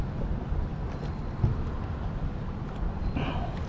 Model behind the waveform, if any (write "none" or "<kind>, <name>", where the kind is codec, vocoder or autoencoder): none